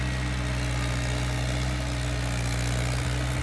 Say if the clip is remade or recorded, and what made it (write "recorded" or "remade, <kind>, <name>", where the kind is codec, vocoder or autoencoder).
recorded